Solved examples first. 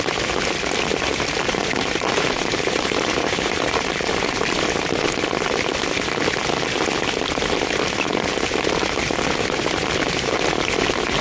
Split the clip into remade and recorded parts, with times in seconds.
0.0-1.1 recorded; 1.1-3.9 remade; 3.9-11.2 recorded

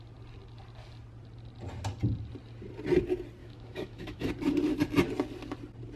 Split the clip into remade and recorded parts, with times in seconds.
0.0-3.4 recorded; 3.4-4.3 remade; 4.3-6.0 recorded

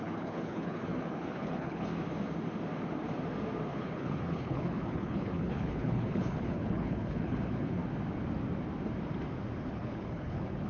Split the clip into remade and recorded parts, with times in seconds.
0.0-1.9 remade; 1.9-3.7 recorded; 3.7-7.8 remade; 7.8-9.7 recorded; 9.7-10.7 remade